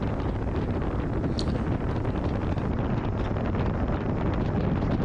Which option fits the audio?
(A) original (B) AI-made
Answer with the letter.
A